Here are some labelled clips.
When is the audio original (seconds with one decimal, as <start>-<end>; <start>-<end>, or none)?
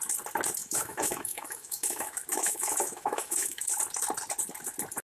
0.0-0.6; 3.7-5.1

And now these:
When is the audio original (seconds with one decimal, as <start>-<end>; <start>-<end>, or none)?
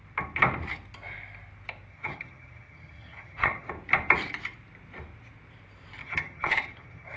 0.0-1.9; 3.7-6.0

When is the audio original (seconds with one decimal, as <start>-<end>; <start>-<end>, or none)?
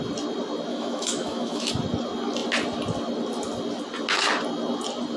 0.0-0.7; 1.7-5.2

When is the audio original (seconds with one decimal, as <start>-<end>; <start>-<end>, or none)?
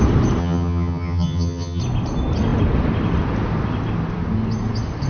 0.0-0.4; 1.8-5.1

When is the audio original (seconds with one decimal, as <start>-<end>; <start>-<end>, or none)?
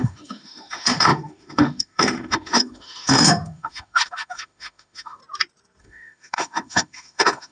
5.2-5.8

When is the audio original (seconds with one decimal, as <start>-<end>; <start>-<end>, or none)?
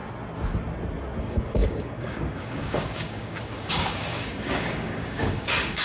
0.0-1.2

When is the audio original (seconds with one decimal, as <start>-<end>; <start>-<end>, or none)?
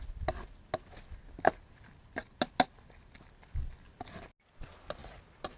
0.0-5.6